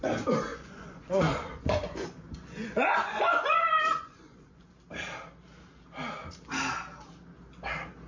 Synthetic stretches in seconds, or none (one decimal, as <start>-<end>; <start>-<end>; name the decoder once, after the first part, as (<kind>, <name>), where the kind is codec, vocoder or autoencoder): 0.5-4.7 (vocoder, Vocos)